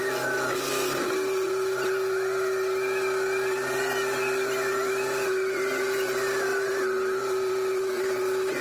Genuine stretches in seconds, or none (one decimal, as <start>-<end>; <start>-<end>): 0.0-8.6

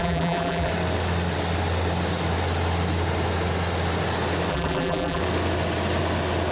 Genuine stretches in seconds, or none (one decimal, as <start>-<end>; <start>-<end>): 0.7-4.5; 5.2-6.5